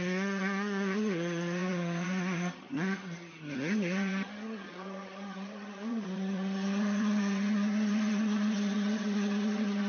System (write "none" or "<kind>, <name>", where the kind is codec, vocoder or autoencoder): vocoder, HiFi-GAN